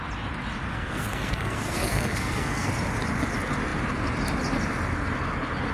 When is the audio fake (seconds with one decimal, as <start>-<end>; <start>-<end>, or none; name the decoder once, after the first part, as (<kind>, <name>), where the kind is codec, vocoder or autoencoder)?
0.7-2.7 (codec, SNAC)